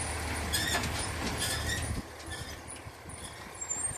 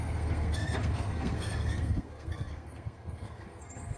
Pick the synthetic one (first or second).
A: second